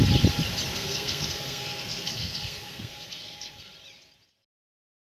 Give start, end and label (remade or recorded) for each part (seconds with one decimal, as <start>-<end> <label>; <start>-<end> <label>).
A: 0.0-0.7 recorded; 0.7-3.7 remade; 3.7-5.0 recorded